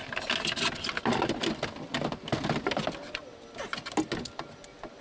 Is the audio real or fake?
real